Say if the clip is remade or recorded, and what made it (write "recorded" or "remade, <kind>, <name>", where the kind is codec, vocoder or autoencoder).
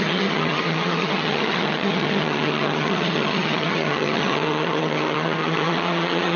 remade, vocoder, HiFi-GAN